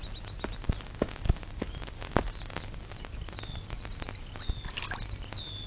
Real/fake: real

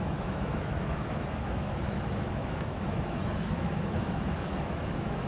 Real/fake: fake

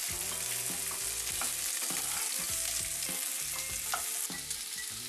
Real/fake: real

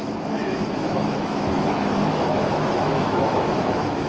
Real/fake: fake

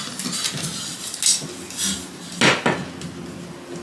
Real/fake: real